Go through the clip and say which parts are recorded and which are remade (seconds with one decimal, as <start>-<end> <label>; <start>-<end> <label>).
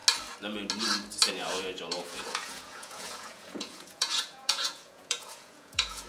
0.0-1.3 recorded; 1.3-6.1 remade